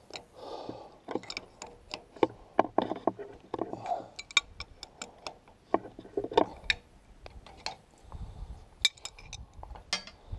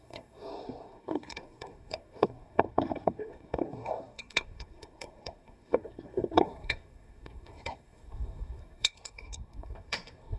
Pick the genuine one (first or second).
first